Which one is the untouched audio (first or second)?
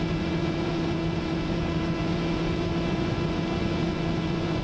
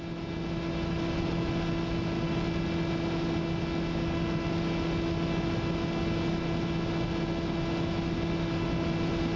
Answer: second